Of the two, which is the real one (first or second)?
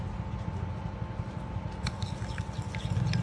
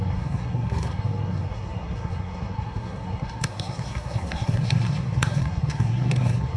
first